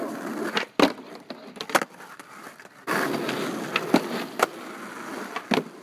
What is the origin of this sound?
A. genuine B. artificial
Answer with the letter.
A